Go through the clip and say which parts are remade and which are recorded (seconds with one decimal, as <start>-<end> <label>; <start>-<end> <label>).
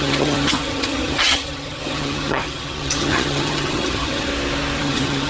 0.0-4.3 remade; 4.3-4.8 recorded; 4.8-5.3 remade